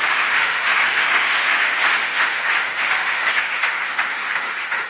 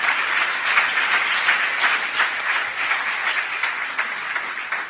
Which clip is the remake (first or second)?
first